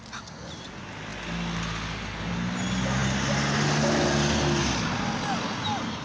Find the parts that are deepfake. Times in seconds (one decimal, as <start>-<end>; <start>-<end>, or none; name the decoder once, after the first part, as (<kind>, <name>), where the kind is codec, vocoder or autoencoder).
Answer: none